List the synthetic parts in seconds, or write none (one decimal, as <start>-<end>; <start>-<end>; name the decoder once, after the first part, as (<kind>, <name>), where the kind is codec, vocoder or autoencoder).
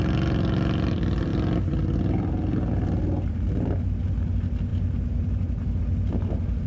none